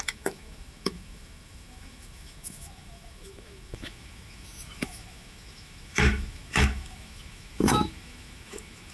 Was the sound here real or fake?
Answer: fake